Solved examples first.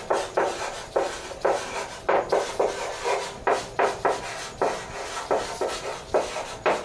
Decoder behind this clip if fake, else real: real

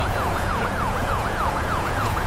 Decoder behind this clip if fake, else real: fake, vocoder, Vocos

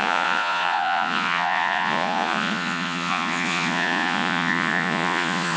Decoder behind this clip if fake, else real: fake, vocoder, Vocos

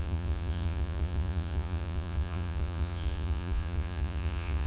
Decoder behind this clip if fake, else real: fake, vocoder, Vocos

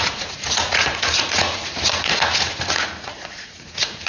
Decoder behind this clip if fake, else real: fake, vocoder, Vocos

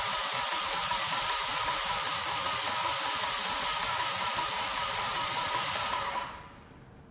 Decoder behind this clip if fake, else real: real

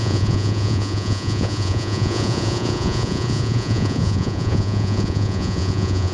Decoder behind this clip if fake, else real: fake, vocoder, Vocos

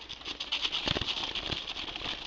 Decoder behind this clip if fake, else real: real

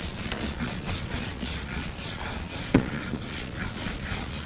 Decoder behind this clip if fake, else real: fake, vocoder, Vocos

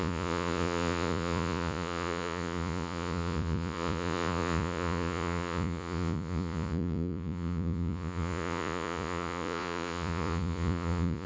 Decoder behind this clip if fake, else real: fake, vocoder, Vocos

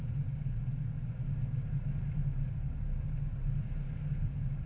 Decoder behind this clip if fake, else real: real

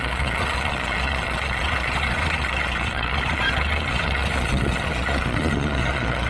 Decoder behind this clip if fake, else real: fake, vocoder, Vocos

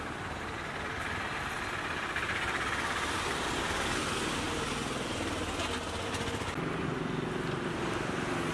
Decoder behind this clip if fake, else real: real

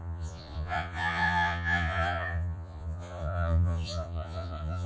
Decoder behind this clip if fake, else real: fake, vocoder, Vocos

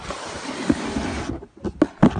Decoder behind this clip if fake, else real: real